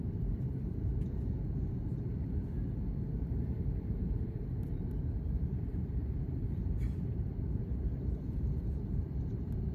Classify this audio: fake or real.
fake